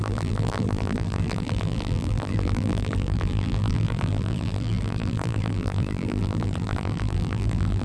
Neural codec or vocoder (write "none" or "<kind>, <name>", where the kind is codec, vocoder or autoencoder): vocoder, BigVGAN v2